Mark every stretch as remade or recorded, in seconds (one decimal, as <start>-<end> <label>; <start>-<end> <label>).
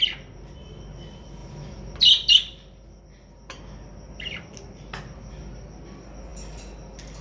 0.0-7.2 recorded